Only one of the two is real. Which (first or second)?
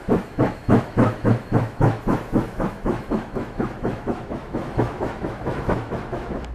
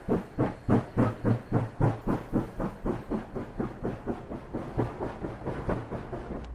second